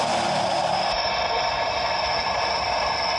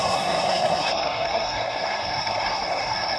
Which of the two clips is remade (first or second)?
second